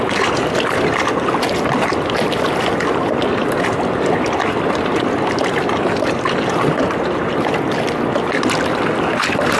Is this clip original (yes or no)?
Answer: yes